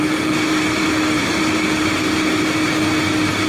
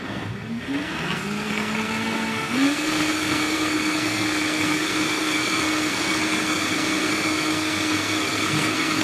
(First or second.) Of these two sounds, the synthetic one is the second